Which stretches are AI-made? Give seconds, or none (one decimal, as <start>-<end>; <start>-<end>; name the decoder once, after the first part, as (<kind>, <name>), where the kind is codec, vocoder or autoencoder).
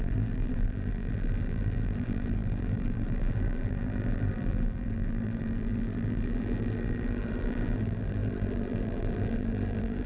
0.0-10.1 (vocoder, BigVGAN v2)